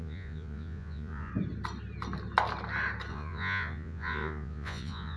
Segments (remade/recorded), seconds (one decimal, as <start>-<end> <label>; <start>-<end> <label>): 0.0-1.3 remade; 1.3-3.1 recorded; 3.1-5.2 remade